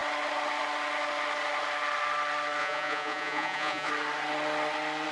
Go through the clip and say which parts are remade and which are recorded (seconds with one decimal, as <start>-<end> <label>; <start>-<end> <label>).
0.0-2.6 recorded; 2.6-3.9 remade; 3.9-5.1 recorded